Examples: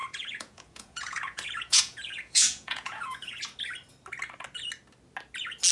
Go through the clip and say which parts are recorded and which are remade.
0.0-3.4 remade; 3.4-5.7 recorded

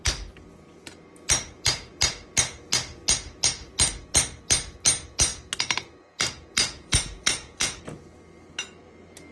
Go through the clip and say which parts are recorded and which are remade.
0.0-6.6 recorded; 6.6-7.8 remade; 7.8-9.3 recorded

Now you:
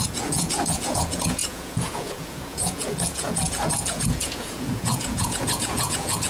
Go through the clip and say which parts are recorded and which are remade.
0.0-6.3 remade